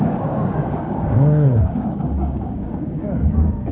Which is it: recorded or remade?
remade